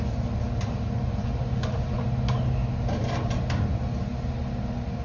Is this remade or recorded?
recorded